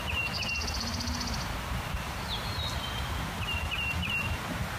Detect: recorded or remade recorded